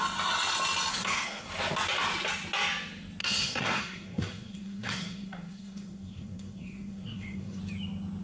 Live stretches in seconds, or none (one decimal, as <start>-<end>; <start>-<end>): 0.0-0.9; 1.5-3.2; 7.6-8.2